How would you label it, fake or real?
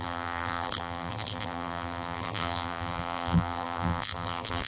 fake